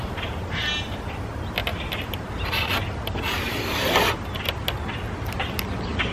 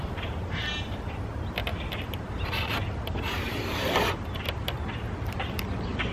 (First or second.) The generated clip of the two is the second